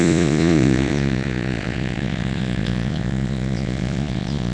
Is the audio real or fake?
fake